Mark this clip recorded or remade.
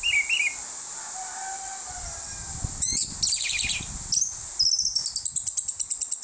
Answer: recorded